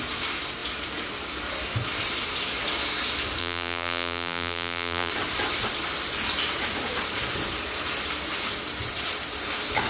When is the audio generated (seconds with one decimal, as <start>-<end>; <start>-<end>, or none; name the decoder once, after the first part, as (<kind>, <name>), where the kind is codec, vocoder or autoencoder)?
3.4-5.1 (vocoder, BigVGAN v2)